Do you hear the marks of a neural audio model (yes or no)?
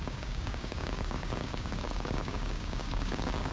yes